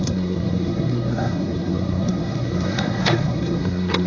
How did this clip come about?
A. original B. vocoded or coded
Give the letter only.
B